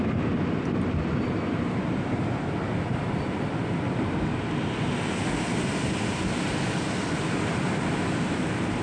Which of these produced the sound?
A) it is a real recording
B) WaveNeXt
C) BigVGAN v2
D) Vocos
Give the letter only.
A